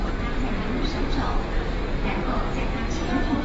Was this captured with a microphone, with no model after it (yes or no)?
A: yes